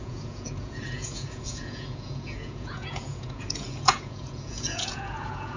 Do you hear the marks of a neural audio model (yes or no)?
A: yes